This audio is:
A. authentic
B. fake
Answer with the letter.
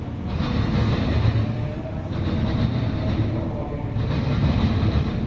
A